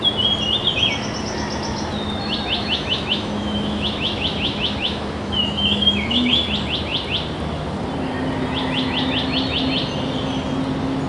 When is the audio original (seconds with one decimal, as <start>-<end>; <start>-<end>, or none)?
0.0-2.6; 6.3-11.1